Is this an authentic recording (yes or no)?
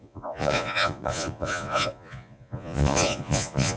no